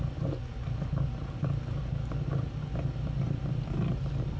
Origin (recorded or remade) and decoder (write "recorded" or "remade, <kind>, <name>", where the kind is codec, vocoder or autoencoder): recorded